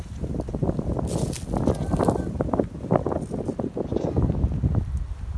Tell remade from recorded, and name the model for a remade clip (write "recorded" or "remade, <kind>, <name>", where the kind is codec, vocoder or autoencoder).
recorded